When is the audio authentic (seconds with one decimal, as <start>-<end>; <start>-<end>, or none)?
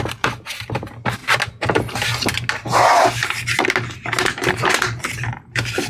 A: 0.0-5.9